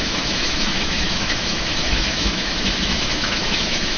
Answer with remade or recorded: remade